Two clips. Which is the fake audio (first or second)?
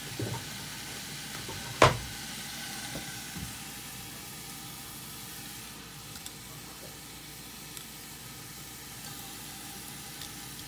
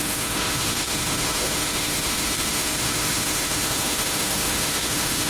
second